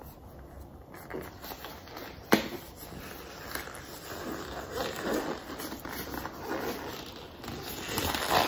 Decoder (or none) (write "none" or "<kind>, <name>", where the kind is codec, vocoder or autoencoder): none